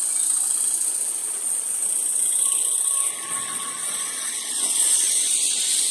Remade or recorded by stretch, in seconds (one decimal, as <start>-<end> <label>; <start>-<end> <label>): 0.0-1.2 recorded; 1.2-1.8 remade; 1.8-3.1 recorded; 3.1-5.5 remade; 5.5-5.9 recorded